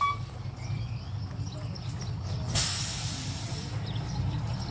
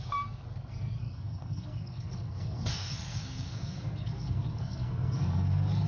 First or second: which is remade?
second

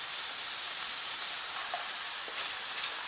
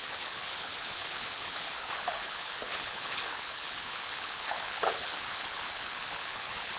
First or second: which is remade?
second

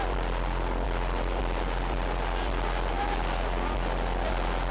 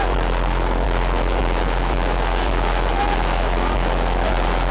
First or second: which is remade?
second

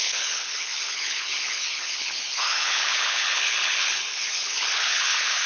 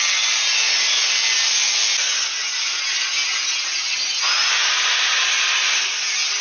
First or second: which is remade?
first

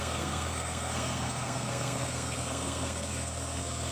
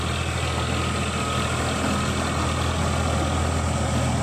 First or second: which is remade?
first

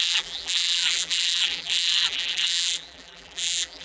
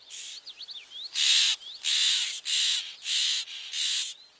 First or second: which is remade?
first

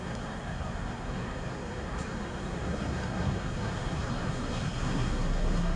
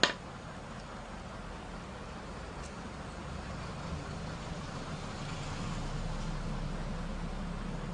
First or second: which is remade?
first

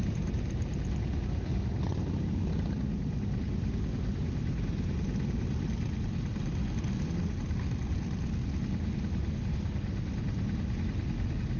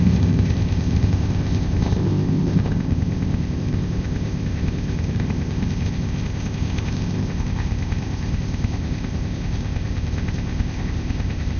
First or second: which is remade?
second